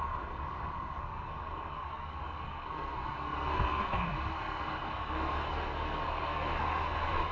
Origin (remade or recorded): remade